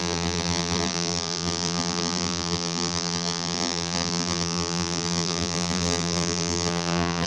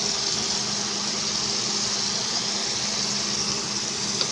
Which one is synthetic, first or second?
first